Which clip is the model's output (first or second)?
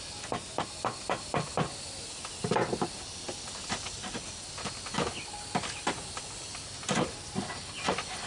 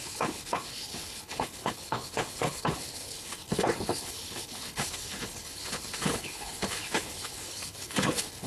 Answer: second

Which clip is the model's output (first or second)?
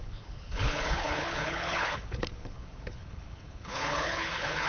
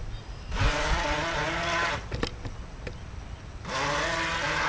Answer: first